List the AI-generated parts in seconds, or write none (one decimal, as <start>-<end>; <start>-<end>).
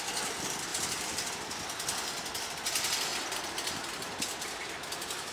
none